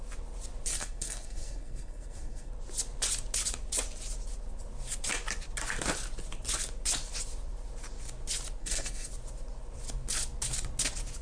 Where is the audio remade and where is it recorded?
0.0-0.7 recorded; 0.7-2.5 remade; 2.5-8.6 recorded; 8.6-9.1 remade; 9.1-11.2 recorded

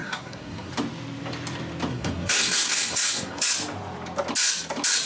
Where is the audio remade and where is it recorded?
0.0-0.7 remade; 0.7-1.9 recorded; 1.9-3.4 remade; 3.4-5.1 recorded

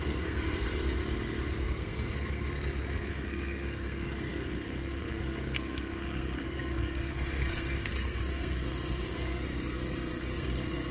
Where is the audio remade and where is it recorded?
0.0-1.0 remade; 1.0-1.6 recorded; 1.6-10.9 remade

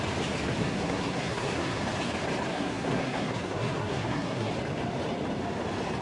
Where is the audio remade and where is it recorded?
0.0-0.6 recorded; 0.6-1.8 remade; 1.8-2.5 recorded; 2.5-4.5 remade; 4.5-6.0 recorded

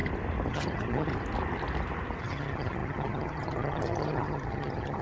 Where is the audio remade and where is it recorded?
0.0-0.5 recorded; 0.5-1.1 remade; 1.1-2.2 recorded; 2.2-5.0 remade

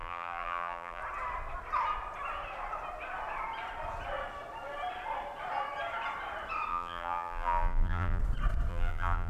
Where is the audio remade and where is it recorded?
0.0-1.0 remade; 1.0-6.7 recorded; 6.7-8.2 remade; 8.2-8.7 recorded; 8.7-9.3 remade

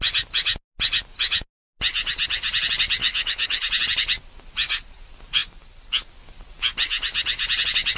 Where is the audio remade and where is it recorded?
0.0-3.0 recorded; 3.0-3.6 remade; 3.6-8.0 recorded